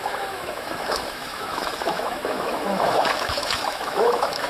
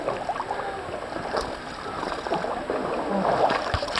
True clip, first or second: second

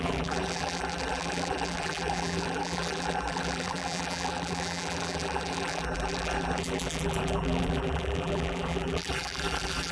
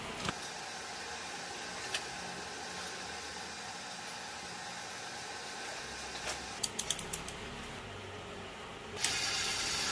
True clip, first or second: second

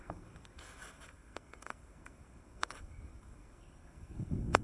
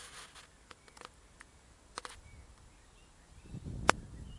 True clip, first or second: second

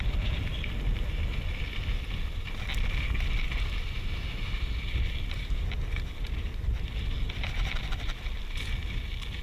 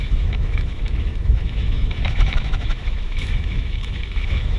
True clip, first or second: first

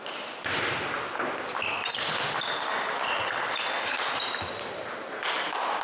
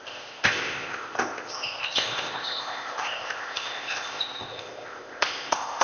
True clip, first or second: first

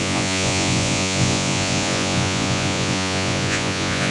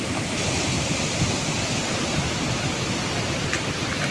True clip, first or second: second